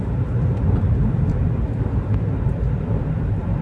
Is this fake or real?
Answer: fake